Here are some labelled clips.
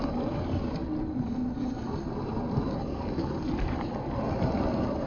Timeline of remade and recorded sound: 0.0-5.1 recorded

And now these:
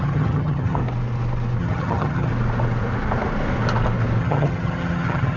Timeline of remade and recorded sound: 0.0-0.8 remade; 0.8-1.6 recorded; 1.6-2.3 remade; 2.3-4.2 recorded; 4.2-5.4 remade

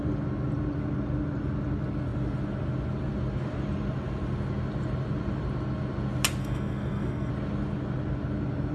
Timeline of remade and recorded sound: 0.0-6.4 recorded; 6.4-7.3 remade; 7.3-8.7 recorded

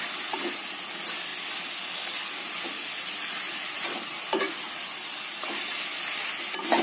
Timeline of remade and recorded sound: 0.0-6.8 recorded

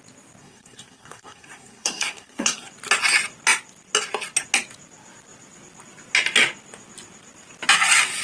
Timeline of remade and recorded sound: 0.0-0.4 recorded; 0.4-2.7 remade; 2.7-8.2 recorded

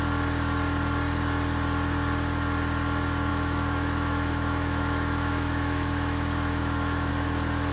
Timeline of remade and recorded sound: 0.0-3.3 recorded; 3.3-7.1 remade; 7.1-7.7 recorded

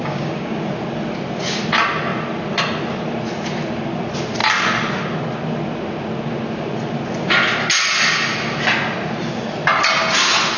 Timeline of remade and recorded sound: 0.0-0.7 remade; 0.7-10.6 recorded

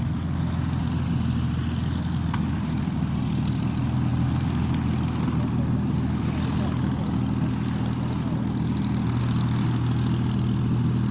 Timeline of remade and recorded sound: 0.0-11.1 recorded